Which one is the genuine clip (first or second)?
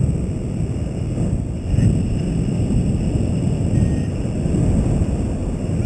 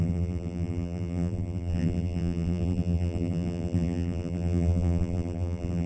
first